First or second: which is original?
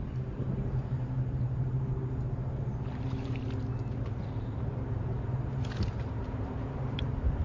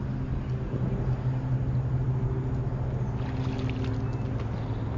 second